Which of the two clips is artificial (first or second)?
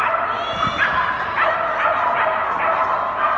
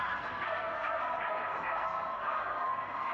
second